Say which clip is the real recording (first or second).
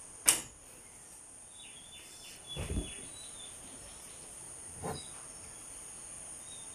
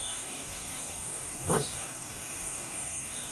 first